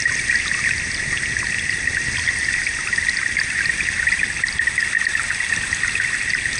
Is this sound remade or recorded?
recorded